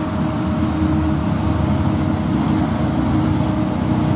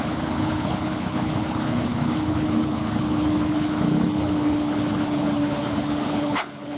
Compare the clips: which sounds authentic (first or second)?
first